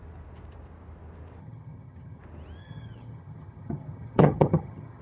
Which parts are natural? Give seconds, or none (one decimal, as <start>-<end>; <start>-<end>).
0.0-1.4; 2.2-2.6